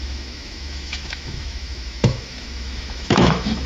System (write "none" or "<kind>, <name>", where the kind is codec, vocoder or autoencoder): autoencoder, DAC-VAE